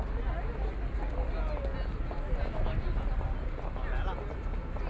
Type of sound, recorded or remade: recorded